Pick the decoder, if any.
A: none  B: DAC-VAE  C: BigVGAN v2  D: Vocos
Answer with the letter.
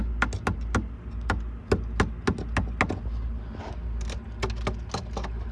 A